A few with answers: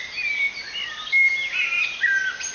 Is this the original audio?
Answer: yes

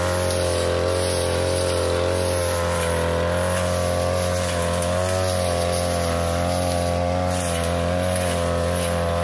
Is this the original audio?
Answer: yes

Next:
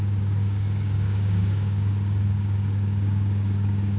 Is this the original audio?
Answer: no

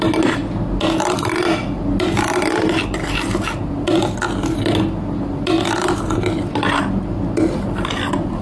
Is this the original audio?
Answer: yes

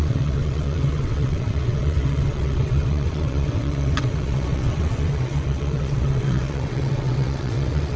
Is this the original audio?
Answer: no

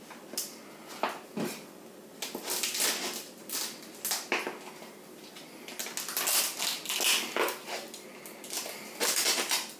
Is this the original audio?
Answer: yes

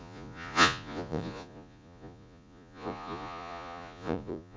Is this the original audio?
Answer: no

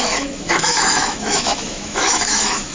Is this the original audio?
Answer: no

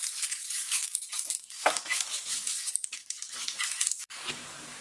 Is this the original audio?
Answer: no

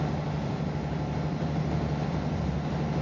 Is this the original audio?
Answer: no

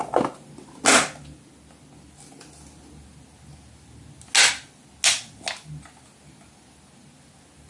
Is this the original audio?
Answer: yes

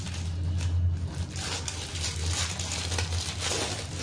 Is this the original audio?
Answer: yes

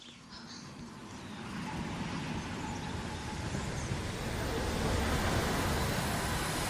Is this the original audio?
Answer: yes